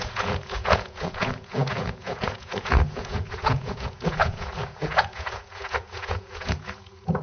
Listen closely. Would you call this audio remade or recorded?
remade